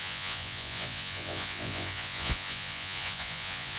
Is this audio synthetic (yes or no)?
yes